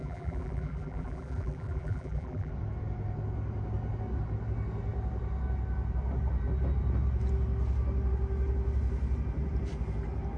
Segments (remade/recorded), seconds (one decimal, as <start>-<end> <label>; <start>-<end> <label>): 0.0-2.5 remade; 2.5-10.4 recorded